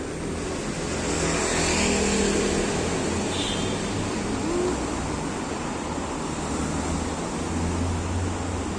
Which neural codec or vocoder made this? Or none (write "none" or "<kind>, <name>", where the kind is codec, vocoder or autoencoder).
none